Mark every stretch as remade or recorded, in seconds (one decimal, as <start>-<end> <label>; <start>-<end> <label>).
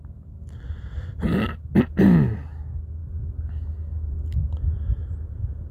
0.0-5.7 recorded